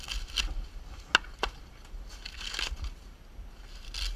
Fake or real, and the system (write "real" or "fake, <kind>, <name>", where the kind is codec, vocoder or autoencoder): real